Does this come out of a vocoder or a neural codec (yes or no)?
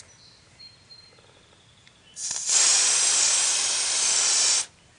yes